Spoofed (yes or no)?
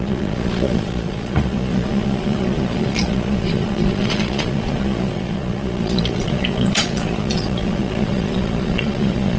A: yes